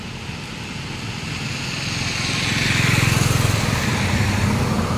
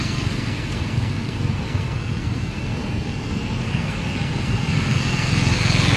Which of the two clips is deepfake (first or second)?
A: second